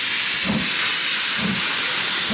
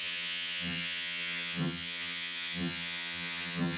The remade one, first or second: second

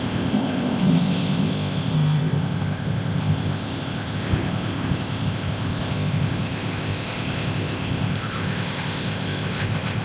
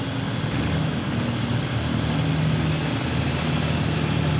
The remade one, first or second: first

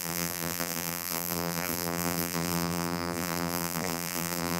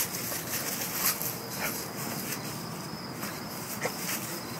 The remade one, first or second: first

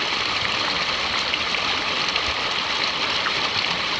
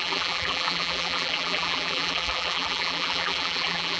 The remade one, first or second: second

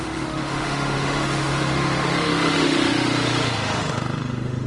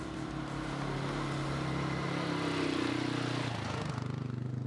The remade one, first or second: first